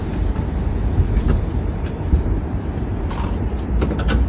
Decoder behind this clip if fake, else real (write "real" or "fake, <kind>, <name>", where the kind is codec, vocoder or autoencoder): fake, vocoder, BigVGAN v2